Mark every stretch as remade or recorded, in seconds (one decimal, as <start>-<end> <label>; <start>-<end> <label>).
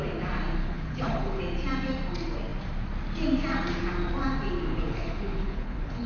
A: 0.0-0.6 recorded; 0.6-1.4 remade; 1.4-4.7 recorded; 4.7-6.1 remade